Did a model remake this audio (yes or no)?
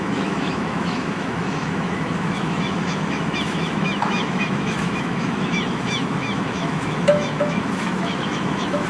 yes